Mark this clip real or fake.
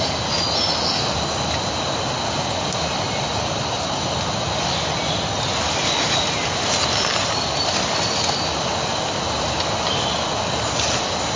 real